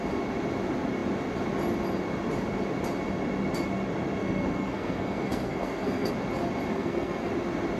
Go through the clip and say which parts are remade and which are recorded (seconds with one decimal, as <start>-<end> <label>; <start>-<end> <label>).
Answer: 0.0-4.2 recorded; 4.2-6.1 remade; 6.1-6.7 recorded; 6.7-7.3 remade; 7.3-7.8 recorded